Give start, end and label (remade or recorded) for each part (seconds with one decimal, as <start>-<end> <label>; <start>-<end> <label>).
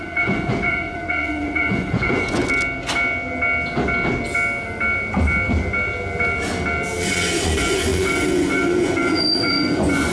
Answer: 0.0-2.4 remade; 2.4-7.0 recorded; 7.0-10.1 remade